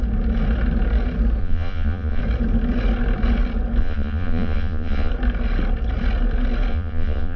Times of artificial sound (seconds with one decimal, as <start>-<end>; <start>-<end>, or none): 1.4-2.2; 3.8-5.1; 6.7-7.4